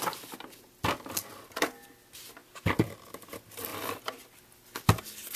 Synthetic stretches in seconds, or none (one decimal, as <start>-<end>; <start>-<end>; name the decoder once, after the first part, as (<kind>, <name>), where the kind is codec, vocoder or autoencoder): none